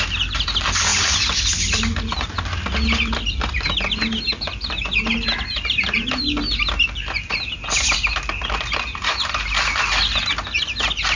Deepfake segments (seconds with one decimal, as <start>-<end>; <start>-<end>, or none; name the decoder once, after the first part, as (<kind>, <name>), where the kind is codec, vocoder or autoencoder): none